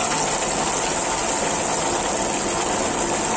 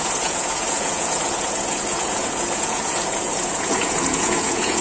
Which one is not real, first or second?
second